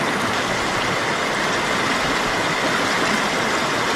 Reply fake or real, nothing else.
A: real